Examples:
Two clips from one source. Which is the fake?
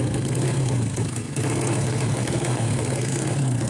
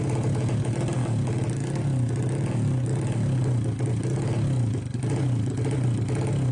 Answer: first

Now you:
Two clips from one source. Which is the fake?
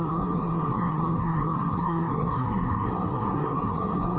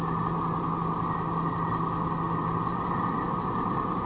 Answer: first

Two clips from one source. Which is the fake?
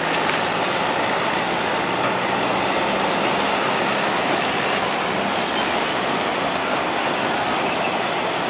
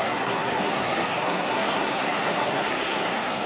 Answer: second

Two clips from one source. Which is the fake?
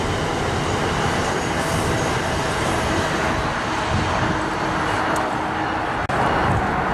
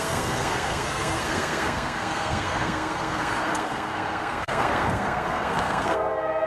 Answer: second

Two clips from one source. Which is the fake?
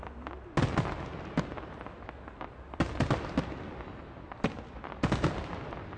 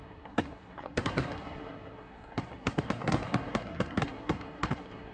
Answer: second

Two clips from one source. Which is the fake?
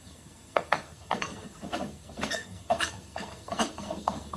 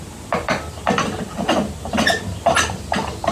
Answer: first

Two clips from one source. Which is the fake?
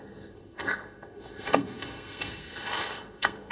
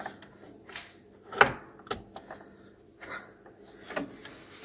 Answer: first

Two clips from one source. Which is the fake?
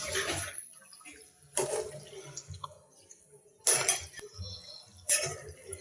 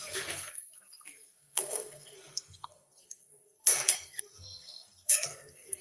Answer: second